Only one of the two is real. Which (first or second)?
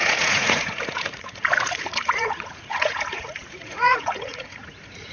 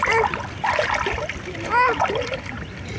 second